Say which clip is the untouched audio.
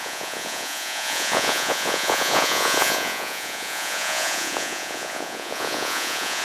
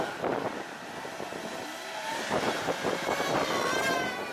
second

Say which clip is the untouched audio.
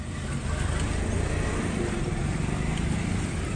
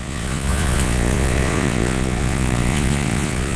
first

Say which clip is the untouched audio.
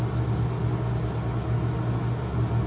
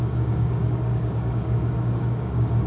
first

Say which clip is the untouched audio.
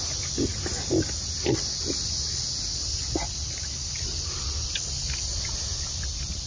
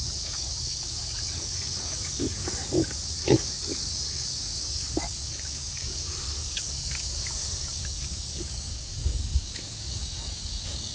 first